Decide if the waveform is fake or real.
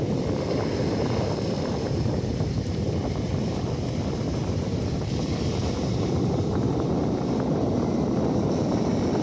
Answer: fake